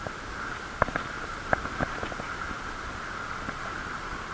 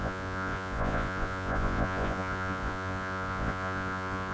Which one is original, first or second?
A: first